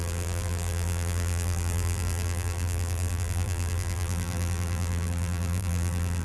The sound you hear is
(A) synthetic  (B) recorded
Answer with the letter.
A